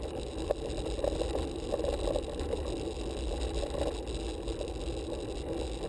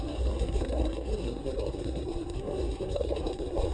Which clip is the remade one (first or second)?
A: second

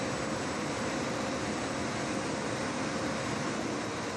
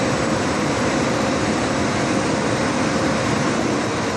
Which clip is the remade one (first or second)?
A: second